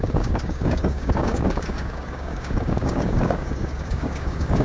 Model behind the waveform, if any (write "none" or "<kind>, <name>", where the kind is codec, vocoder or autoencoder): codec, DAC